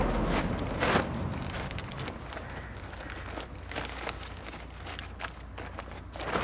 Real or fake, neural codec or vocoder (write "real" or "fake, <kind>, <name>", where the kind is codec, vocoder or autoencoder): real